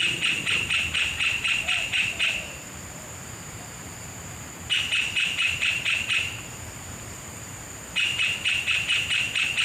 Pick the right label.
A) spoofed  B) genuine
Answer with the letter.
A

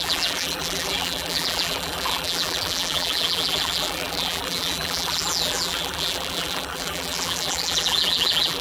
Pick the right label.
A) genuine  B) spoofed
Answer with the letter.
B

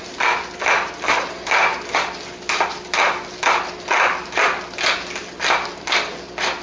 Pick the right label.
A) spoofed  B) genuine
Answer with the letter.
B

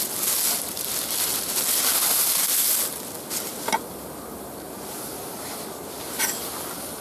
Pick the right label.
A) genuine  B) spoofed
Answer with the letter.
A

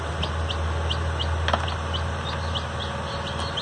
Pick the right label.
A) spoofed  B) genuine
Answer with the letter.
B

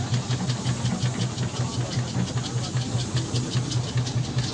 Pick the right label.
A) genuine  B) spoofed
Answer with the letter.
A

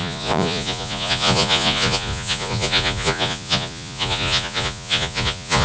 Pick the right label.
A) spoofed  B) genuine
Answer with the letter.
A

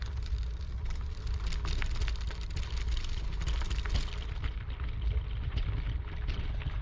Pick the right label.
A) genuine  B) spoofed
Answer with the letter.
A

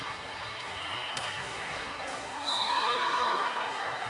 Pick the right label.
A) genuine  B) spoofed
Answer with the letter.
B